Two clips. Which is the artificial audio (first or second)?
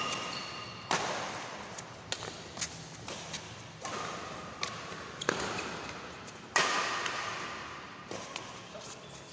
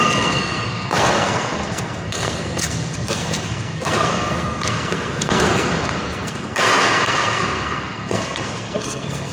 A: second